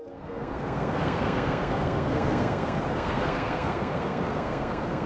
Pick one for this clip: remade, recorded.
remade